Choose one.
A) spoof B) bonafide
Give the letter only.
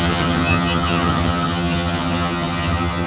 A